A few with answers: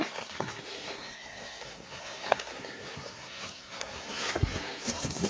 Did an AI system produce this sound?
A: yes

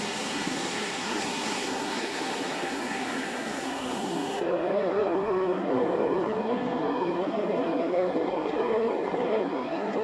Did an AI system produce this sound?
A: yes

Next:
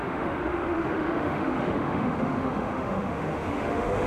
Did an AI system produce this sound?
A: yes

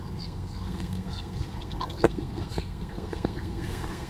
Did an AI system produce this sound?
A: yes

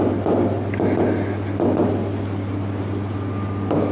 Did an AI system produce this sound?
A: no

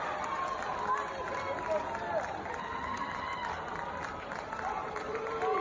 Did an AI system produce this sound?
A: no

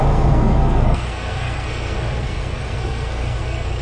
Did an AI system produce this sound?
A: yes